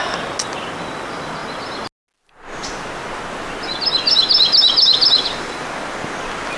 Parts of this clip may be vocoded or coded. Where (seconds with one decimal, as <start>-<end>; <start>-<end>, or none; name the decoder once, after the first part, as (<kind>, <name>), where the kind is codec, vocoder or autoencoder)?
none